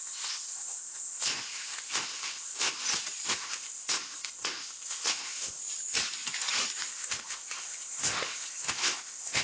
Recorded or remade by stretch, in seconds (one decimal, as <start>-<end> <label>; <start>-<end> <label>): 0.0-2.8 remade; 2.8-3.3 recorded; 3.3-5.6 remade; 5.6-6.9 recorded; 6.9-9.4 remade